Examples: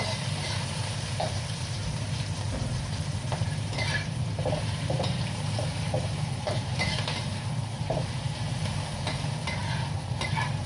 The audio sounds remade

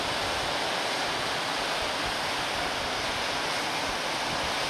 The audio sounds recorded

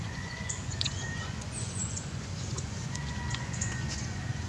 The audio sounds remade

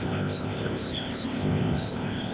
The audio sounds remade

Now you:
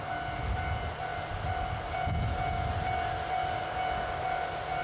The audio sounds recorded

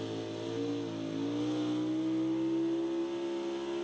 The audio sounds recorded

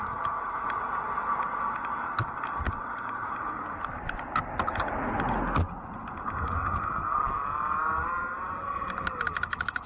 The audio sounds recorded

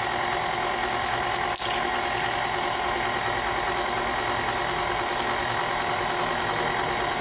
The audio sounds recorded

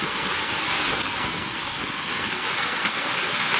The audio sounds remade